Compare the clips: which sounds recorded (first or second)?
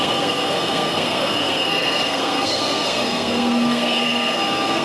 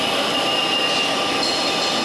second